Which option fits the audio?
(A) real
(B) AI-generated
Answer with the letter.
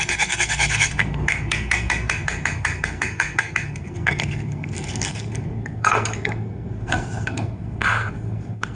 B